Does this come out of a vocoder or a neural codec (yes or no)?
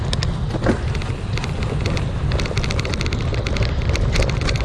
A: no